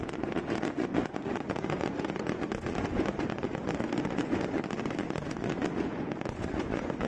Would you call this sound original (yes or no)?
no